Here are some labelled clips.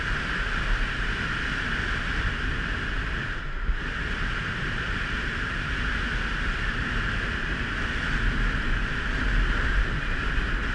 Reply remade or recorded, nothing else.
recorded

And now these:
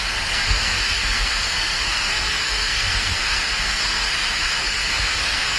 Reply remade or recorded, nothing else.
remade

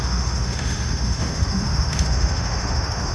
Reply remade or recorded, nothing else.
remade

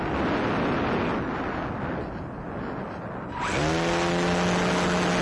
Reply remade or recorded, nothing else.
recorded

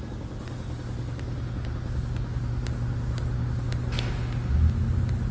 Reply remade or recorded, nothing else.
recorded